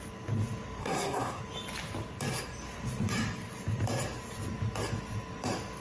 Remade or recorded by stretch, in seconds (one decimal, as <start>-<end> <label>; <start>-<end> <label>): 0.0-0.8 recorded; 0.8-1.4 remade; 1.4-5.8 recorded

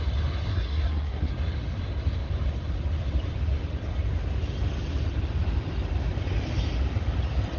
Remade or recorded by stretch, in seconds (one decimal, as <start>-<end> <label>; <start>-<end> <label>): 0.0-0.5 recorded; 0.5-1.3 remade; 1.3-7.6 recorded

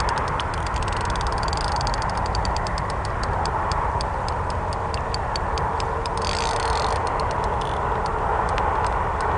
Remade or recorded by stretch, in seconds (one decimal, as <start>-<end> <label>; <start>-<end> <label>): 0.0-9.4 recorded

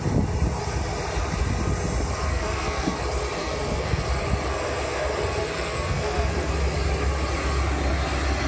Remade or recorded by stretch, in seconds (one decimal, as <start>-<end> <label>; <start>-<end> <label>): 0.0-2.3 recorded; 2.3-3.0 remade; 3.0-3.4 recorded; 3.4-4.0 remade; 4.0-5.4 recorded; 5.4-6.5 remade; 6.5-8.5 recorded